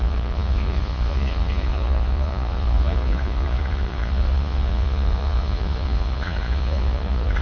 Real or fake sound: fake